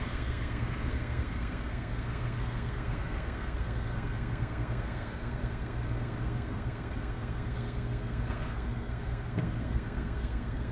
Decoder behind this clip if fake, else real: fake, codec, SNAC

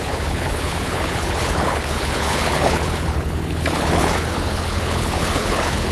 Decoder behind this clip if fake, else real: fake, codec, HILCodec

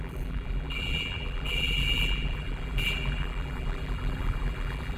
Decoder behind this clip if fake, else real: fake, vocoder, BigVGAN v2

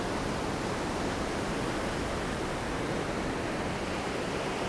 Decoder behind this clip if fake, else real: real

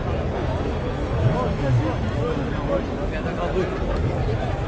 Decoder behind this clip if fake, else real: real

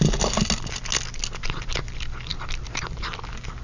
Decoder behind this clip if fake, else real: real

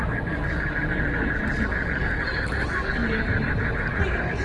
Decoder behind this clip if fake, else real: fake, vocoder, BigVGAN v2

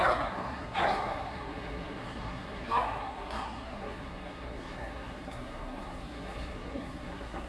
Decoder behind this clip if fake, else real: fake, codec, SNAC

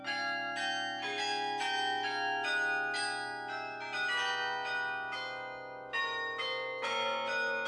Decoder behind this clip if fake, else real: real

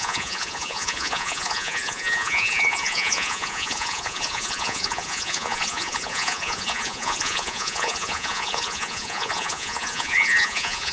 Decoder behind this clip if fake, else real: fake, vocoder, Vocos